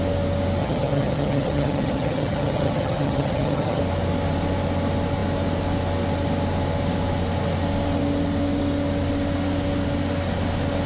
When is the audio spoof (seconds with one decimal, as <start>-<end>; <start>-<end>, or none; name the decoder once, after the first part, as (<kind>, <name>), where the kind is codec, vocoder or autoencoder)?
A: 0.6-3.8 (vocoder, HiFi-GAN)